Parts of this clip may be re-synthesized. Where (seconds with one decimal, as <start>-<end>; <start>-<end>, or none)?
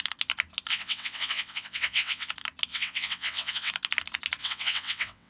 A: 0.7-2.3; 2.7-3.7; 4.4-5.3